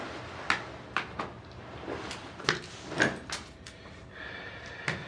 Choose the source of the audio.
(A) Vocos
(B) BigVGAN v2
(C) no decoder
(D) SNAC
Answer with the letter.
C